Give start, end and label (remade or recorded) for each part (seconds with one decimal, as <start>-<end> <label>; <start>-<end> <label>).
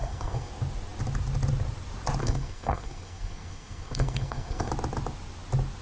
0.0-0.5 remade; 0.5-2.2 recorded; 2.2-4.7 remade; 4.7-5.8 recorded